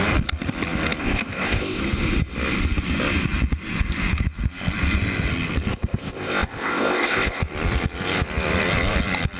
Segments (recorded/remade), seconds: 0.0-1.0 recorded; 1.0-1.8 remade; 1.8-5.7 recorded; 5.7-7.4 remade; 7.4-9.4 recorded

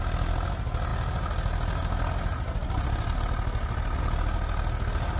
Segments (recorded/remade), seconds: 0.0-5.2 recorded

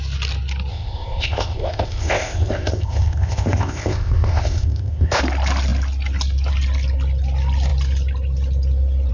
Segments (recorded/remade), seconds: 0.0-0.7 recorded; 0.7-5.2 remade; 5.2-9.1 recorded

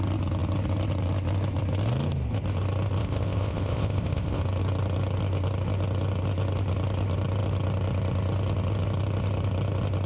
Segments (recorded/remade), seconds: 0.0-3.0 recorded; 3.0-4.4 remade; 4.4-10.1 recorded